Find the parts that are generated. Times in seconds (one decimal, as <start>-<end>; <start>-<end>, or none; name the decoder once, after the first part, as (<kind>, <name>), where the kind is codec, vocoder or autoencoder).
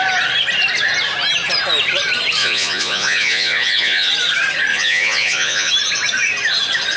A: 2.4-4.1 (vocoder, Vocos); 4.7-5.7